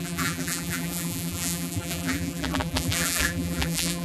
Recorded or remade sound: remade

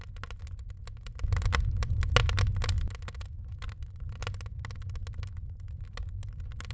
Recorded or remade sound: recorded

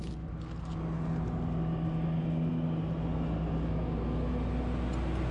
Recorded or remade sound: recorded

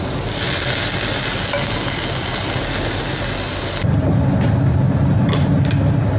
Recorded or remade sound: recorded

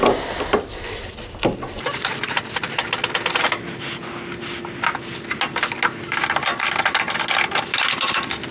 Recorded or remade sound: recorded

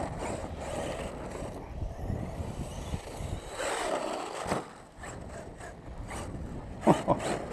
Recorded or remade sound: recorded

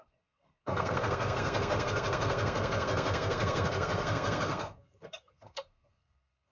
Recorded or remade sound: remade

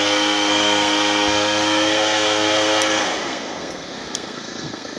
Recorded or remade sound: remade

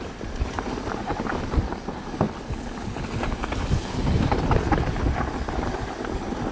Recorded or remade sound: recorded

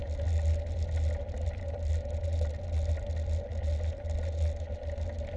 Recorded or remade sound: recorded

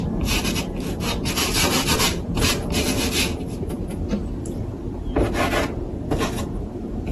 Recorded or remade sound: remade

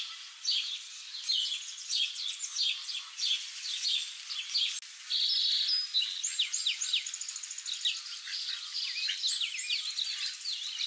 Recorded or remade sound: recorded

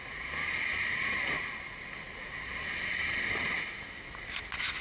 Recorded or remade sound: recorded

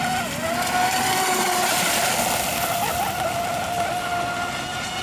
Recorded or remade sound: recorded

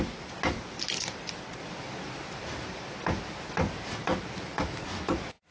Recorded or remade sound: recorded